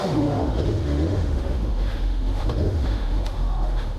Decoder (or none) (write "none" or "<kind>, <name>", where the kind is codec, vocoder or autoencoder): autoencoder, DAC-VAE